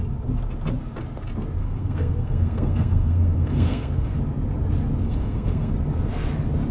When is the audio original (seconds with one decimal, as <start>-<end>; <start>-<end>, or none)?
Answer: 0.0-1.6; 4.2-5.0; 5.7-6.7